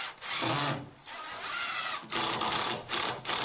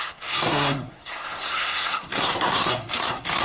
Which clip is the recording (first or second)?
first